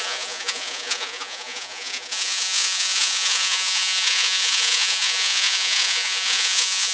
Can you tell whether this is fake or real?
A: fake